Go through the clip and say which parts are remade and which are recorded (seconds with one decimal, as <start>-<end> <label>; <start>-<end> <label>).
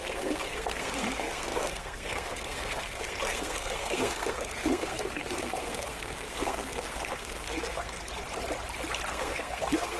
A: 0.0-8.0 remade; 8.0-9.1 recorded; 9.1-10.0 remade